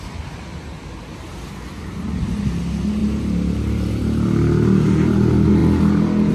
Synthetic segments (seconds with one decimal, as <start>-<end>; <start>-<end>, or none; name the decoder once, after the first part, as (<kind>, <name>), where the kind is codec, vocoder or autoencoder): none